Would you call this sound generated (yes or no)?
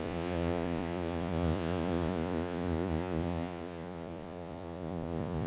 yes